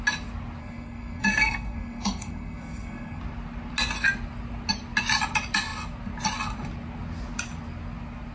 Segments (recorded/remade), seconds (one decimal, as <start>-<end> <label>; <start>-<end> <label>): 0.0-0.6 recorded; 0.6-3.2 remade; 3.2-8.3 recorded